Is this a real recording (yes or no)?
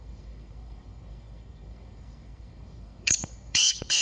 no